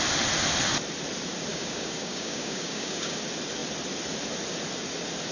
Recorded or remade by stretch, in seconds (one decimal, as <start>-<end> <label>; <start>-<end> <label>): 0.0-1.5 recorded; 1.5-3.2 remade; 3.2-5.3 recorded